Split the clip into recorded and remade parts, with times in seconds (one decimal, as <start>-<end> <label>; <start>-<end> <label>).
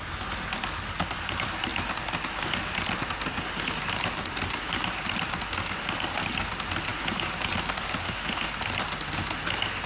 0.0-8.0 recorded; 8.0-8.5 remade; 8.5-9.9 recorded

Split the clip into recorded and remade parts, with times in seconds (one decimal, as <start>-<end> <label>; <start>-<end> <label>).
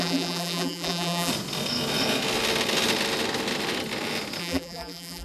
0.0-1.3 remade; 1.3-4.4 recorded; 4.4-5.2 remade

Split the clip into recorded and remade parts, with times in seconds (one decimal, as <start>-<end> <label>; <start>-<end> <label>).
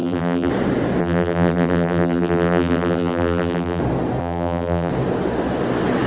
0.0-0.5 remade; 0.5-1.0 recorded; 1.0-3.8 remade; 3.8-4.2 recorded; 4.2-4.9 remade; 4.9-6.1 recorded